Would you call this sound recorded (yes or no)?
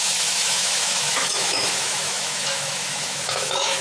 no